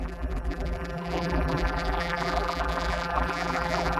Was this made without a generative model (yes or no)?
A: no